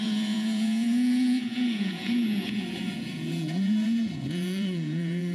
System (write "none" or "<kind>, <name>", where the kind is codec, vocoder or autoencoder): vocoder, Vocos